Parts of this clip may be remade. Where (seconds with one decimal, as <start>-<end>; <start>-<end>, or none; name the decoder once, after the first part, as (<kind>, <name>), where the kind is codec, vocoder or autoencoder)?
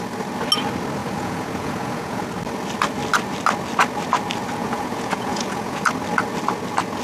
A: 1.0-2.2 (vocoder, Vocos); 4.6-5.8